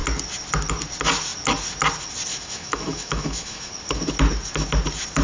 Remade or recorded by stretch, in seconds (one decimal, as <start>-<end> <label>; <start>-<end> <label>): 0.0-2.3 recorded; 2.3-3.7 remade; 3.7-5.2 recorded